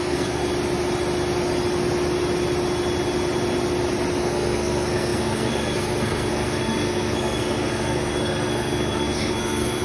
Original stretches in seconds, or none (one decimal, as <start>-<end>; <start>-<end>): 0.4-4.2